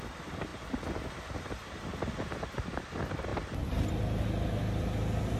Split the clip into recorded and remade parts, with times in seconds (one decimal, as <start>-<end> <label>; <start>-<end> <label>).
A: 0.0-5.4 recorded